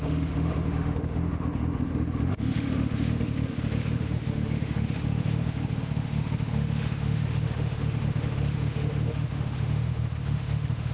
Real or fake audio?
fake